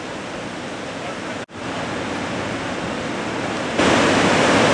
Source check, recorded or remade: recorded